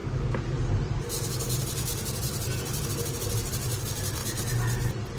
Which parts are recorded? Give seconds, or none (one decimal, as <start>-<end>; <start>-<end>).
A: 0.0-5.2